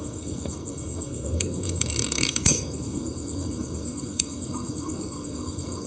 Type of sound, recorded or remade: remade